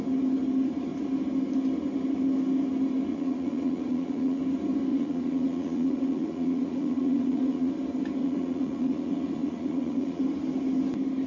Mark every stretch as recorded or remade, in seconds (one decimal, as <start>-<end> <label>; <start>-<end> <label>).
0.0-3.1 recorded; 3.1-4.4 remade; 4.4-4.9 recorded; 4.9-7.7 remade; 7.7-8.2 recorded; 8.2-10.2 remade; 10.2-11.3 recorded